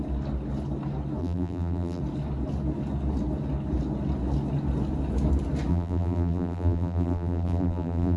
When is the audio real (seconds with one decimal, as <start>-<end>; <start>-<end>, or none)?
0.0-1.2; 2.0-5.7